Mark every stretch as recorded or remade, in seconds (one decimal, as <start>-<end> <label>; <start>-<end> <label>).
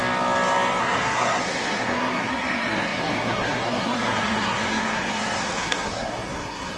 0.0-0.8 recorded; 0.8-6.8 remade